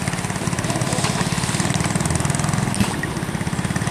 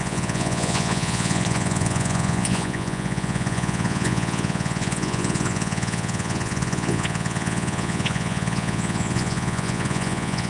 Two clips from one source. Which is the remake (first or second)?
second